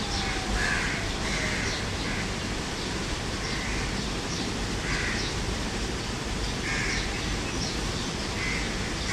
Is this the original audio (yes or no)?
yes